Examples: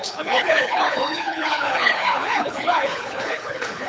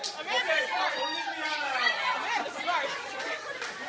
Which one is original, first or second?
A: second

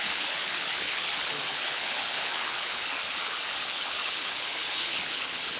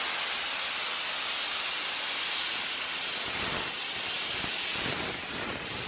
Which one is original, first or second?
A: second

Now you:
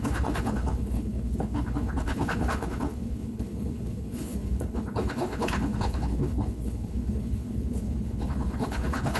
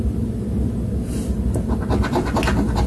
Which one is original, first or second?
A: second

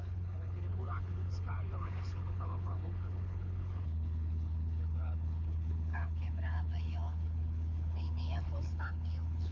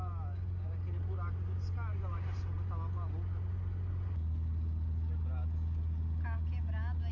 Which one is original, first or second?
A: second